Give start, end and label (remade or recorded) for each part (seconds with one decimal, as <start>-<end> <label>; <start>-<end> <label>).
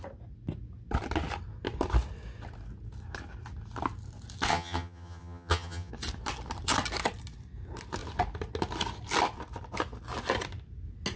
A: 0.0-4.5 recorded; 4.5-5.9 remade; 5.9-11.2 recorded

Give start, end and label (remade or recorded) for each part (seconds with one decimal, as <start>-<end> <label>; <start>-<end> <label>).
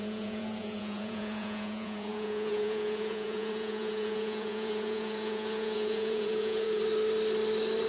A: 0.0-6.8 remade; 6.8-7.9 recorded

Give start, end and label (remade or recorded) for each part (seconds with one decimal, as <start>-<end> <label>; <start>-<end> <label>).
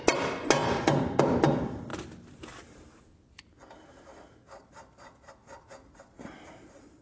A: 0.0-1.9 recorded; 1.9-3.0 remade; 3.0-7.0 recorded